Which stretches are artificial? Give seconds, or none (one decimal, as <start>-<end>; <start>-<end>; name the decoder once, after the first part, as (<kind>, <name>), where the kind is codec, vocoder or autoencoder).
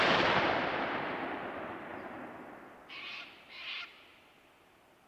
none